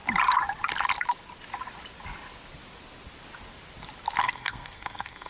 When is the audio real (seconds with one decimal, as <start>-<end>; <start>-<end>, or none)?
0.0-4.2